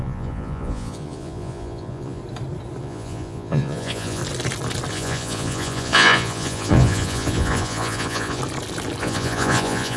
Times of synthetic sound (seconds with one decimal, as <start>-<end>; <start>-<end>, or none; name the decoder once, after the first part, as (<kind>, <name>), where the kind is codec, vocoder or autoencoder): 0.0-2.2 (vocoder, Vocos); 2.8-4.2; 4.9-8.4; 9.0-10.0